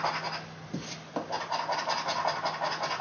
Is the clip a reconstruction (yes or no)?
no